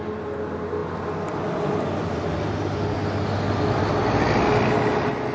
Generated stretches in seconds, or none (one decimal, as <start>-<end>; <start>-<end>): none